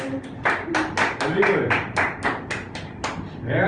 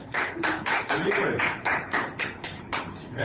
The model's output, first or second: second